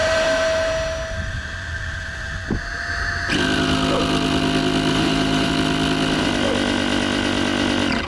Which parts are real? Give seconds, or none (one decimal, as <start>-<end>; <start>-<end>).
0.7-4.9; 5.5-8.1